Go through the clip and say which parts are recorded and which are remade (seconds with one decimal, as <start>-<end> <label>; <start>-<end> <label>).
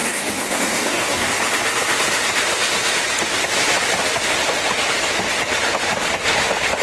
0.0-1.3 remade; 1.3-6.8 recorded